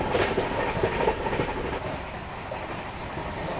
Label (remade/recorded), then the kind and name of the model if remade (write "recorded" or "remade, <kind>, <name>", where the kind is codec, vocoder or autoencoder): recorded